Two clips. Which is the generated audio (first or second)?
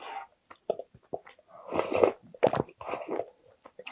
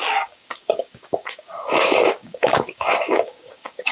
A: second